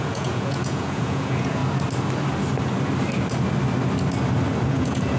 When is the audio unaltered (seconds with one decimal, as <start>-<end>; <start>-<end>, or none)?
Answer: 1.6-4.7